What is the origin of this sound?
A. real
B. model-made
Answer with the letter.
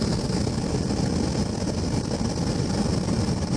A